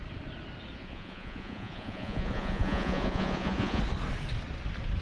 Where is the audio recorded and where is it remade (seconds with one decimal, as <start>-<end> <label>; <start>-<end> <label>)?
0.0-0.8 recorded; 0.8-3.8 remade; 3.8-5.0 recorded